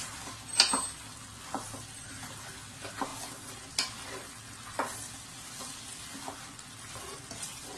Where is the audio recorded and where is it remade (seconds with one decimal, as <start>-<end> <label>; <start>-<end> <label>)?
0.0-7.8 recorded